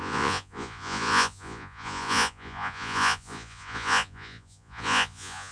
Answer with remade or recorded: remade